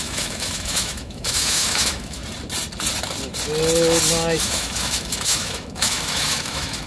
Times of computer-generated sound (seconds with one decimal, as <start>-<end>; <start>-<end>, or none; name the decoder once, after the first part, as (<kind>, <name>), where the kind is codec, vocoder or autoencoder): 0.0-2.2 (autoencoder, DAC-VAE); 4.4-6.9